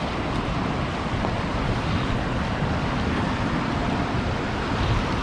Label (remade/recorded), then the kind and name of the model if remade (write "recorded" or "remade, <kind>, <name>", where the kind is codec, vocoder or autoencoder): recorded